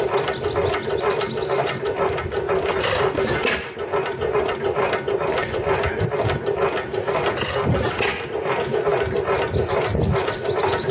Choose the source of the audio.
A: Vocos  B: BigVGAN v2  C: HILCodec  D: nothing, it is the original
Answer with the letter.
D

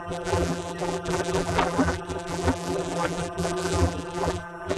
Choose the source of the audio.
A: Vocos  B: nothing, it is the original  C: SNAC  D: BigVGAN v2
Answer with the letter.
D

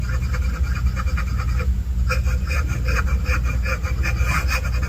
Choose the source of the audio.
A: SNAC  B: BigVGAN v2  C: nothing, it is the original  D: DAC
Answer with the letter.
C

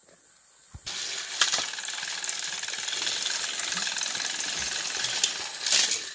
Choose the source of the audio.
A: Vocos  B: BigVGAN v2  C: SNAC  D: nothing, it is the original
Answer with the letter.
D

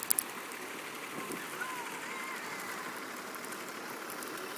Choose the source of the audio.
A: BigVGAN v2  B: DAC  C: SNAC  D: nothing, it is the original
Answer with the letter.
D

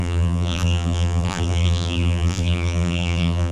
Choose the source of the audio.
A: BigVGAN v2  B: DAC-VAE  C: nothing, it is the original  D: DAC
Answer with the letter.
A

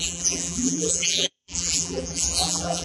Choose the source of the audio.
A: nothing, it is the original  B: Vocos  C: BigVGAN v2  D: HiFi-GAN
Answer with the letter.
C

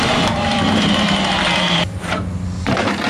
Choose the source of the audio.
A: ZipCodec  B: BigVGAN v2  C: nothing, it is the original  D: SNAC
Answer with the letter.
B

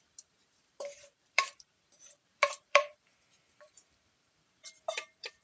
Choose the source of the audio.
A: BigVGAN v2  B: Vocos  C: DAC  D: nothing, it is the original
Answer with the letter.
A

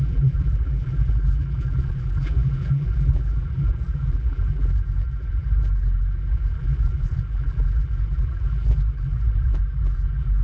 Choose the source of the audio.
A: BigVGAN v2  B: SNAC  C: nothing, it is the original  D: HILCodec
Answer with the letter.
A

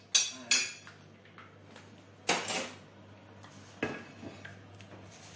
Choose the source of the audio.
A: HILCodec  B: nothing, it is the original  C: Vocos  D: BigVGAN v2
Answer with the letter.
B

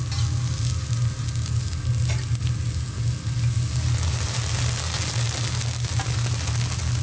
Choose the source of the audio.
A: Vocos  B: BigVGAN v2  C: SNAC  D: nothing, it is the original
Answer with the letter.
D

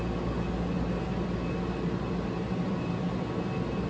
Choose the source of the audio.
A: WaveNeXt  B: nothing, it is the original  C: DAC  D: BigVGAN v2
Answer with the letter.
B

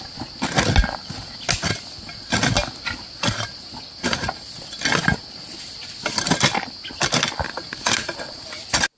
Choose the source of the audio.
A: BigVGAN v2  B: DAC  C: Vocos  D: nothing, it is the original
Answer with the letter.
D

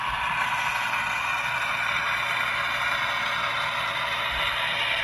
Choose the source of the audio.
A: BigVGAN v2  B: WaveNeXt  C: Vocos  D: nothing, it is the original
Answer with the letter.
D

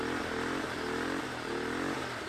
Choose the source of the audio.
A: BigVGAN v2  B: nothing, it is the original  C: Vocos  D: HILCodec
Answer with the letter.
B